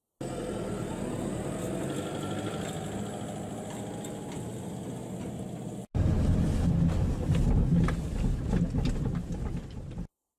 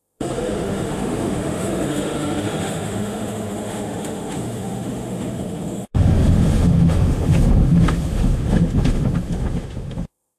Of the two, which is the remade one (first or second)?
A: second